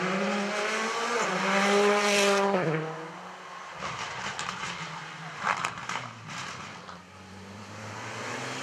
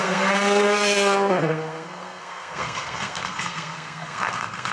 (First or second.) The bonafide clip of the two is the first